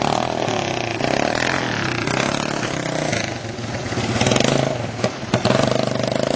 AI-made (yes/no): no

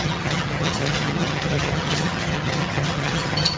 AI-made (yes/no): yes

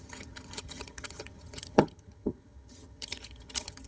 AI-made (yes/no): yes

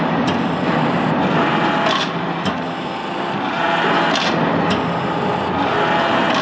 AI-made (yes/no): no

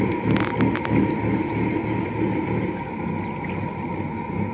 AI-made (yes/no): no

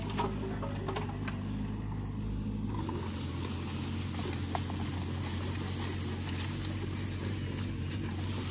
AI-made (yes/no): no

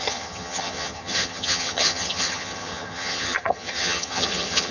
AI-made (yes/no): yes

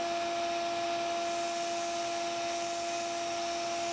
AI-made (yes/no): no